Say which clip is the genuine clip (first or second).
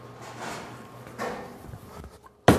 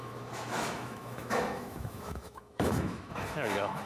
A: first